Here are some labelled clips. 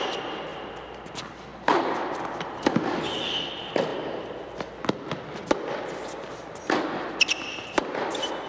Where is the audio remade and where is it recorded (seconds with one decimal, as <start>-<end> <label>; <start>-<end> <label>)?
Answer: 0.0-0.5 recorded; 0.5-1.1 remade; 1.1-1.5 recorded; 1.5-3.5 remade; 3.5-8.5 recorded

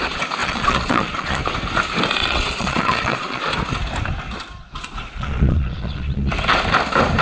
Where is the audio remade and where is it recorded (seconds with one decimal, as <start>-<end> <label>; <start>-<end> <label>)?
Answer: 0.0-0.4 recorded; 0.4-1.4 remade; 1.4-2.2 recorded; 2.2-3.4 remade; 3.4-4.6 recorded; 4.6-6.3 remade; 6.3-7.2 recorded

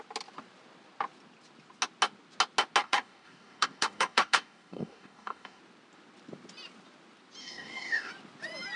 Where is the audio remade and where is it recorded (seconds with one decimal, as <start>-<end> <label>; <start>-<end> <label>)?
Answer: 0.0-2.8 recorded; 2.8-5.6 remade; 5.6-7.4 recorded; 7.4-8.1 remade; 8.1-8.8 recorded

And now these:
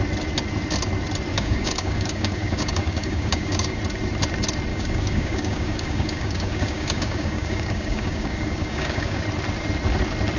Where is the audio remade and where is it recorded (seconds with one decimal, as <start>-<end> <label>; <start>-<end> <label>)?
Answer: 0.0-1.3 recorded; 1.3-3.8 remade; 3.8-4.7 recorded; 4.7-9.2 remade; 9.2-10.4 recorded

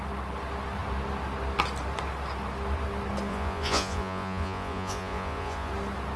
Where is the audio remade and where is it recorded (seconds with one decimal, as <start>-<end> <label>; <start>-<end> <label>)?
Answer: 0.0-3.3 recorded; 3.3-5.7 remade; 5.7-6.2 recorded

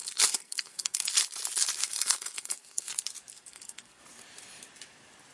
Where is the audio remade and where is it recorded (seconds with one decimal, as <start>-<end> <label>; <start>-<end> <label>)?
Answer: 0.0-1.1 remade; 1.1-1.8 recorded; 1.8-2.9 remade; 2.9-3.3 recorded; 3.3-4.0 remade; 4.0-5.3 recorded